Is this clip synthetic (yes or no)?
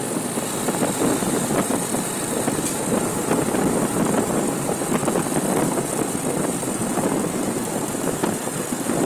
no